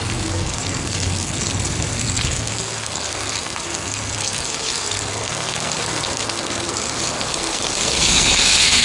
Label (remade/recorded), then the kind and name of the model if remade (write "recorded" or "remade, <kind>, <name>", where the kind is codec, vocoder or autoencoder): remade, codec, SNAC